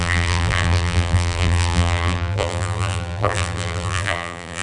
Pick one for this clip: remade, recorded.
remade